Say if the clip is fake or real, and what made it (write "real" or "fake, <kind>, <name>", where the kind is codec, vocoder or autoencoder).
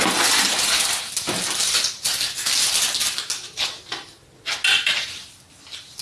real